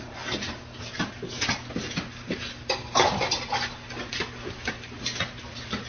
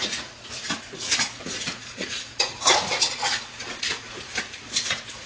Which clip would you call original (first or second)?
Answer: first